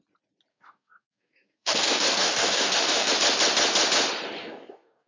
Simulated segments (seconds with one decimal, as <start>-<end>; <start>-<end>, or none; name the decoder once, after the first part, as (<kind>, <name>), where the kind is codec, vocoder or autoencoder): 0.5-3.1 (codec, DAC); 4.4-5.1